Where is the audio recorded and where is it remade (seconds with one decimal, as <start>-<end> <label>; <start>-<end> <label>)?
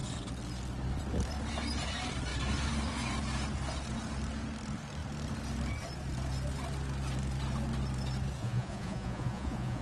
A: 0.0-8.4 recorded; 8.4-9.8 remade